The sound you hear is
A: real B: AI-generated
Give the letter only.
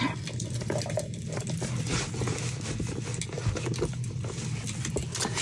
A